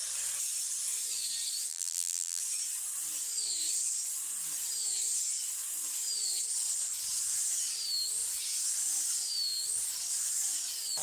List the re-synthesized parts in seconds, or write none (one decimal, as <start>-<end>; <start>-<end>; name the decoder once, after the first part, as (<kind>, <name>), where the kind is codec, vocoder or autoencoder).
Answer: 1.7-2.4 (vocoder, BigVGAN v2)